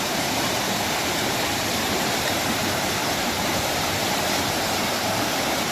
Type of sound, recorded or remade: remade